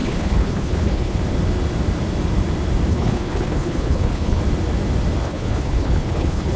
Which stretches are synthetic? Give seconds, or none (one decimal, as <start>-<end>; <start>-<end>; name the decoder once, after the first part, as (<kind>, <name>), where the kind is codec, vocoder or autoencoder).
0.0-1.2 (codec, HILCodec); 2.9-4.4; 5.2-6.6